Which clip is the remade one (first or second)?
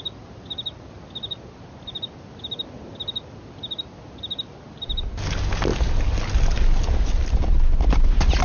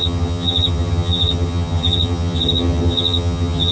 second